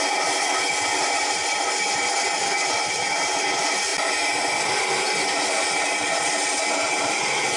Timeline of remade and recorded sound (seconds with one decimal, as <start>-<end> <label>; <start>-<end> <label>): 0.0-7.6 recorded